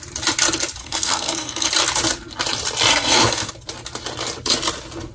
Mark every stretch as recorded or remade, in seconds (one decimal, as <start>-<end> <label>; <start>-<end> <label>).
0.0-0.8 recorded; 0.8-1.7 remade; 1.7-2.9 recorded; 2.9-3.5 remade; 3.5-5.1 recorded

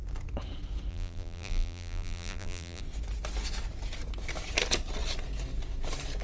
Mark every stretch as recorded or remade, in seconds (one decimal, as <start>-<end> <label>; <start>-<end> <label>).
0.0-0.9 recorded; 0.9-2.8 remade; 2.8-6.2 recorded

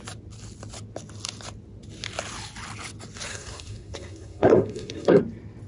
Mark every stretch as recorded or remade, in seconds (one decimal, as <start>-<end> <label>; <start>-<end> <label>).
0.0-3.3 recorded; 3.3-5.2 remade; 5.2-5.7 recorded

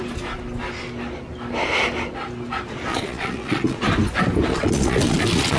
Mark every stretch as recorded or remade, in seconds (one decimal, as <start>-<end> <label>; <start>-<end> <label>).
0.0-2.9 recorded; 2.9-3.8 remade; 3.8-4.5 recorded; 4.5-5.6 remade